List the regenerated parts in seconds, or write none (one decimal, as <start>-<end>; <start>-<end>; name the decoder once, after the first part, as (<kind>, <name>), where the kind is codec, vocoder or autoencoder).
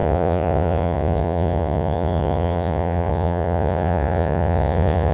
0.0-5.1 (vocoder, Vocos)